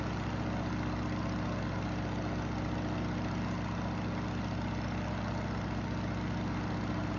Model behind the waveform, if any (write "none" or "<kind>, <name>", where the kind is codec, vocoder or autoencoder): none